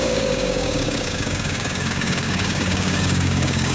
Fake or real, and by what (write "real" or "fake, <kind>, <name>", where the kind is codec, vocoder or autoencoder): fake, codec, DAC